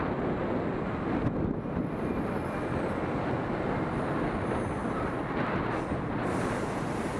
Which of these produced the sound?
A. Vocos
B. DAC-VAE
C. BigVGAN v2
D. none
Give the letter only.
D